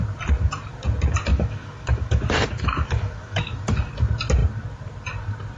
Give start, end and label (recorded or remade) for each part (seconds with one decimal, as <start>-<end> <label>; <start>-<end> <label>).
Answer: 0.0-1.3 recorded; 1.3-3.9 remade; 3.9-5.6 recorded